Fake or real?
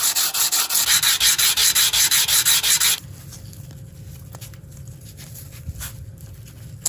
real